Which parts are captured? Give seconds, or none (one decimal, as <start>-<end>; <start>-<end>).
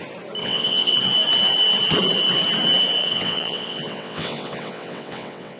0.0-0.4; 0.9-3.0